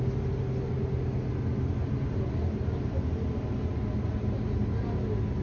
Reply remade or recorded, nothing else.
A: recorded